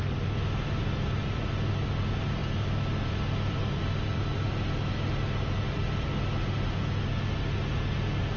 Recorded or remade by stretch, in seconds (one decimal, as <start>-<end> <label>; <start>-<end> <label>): 0.0-8.4 recorded